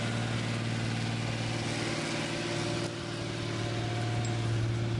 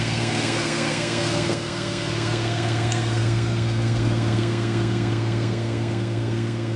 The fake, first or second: second